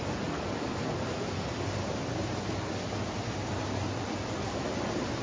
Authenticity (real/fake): real